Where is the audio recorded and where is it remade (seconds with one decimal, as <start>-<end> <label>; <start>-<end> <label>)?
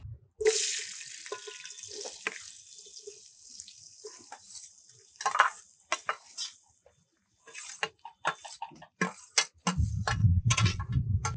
0.0-10.2 recorded; 10.2-10.8 remade; 10.8-11.4 recorded